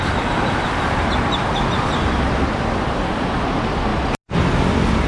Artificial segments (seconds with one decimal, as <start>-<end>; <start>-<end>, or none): none